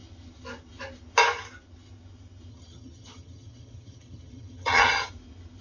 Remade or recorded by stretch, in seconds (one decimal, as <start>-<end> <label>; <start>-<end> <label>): 0.0-2.5 recorded; 2.5-5.1 remade; 5.1-5.6 recorded